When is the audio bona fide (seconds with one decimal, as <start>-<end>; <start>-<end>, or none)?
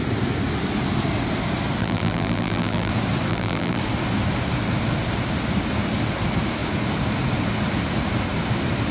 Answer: 0.0-1.8; 2.9-3.3; 3.8-8.9